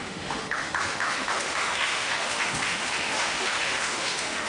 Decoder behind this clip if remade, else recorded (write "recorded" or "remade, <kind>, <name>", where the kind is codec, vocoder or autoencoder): remade, autoencoder, DAC-VAE